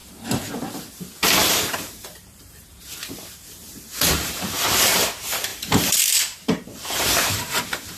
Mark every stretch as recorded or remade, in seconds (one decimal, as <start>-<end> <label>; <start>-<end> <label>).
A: 0.0-8.0 remade